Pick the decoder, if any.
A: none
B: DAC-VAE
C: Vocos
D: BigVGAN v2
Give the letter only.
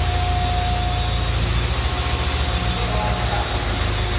A